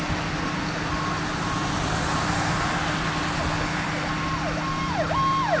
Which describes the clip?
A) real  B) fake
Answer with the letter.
A